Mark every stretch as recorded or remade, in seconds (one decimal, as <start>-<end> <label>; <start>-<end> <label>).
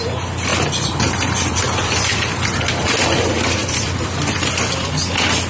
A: 0.0-0.5 recorded; 0.5-3.2 remade; 3.2-3.6 recorded; 3.6-4.9 remade; 4.9-5.5 recorded